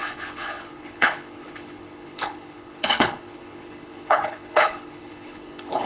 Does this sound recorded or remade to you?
remade